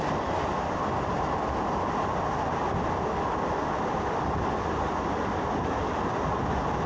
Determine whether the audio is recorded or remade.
recorded